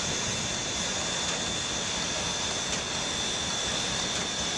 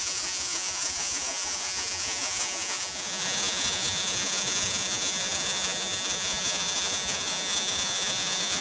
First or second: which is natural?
first